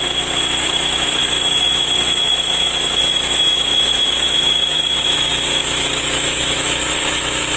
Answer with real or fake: fake